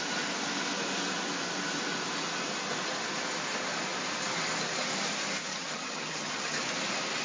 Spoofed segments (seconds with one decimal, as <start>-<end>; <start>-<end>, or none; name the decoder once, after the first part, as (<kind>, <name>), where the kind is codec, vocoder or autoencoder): 5.5-6.6 (vocoder, HiFi-GAN)